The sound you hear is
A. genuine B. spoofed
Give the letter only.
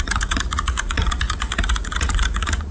B